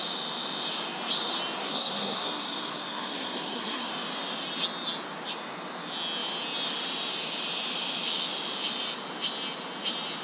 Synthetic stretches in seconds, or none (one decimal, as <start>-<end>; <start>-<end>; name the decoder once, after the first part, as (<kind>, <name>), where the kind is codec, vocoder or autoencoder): 1.6-3.9 (codec, SNAC)